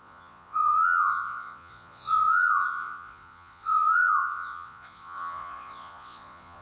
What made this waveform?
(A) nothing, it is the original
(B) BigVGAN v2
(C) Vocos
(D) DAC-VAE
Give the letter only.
C